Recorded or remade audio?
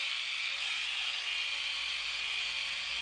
recorded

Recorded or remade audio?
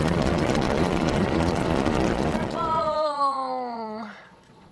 remade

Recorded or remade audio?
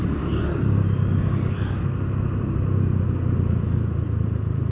recorded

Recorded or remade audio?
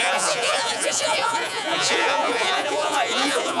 remade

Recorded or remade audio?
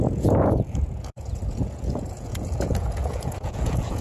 remade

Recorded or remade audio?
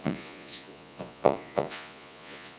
remade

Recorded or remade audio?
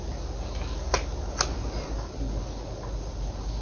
recorded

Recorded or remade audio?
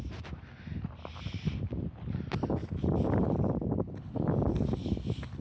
recorded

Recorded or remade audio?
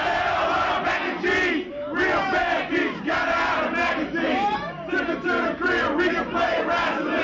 recorded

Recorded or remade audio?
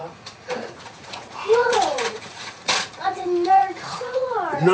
remade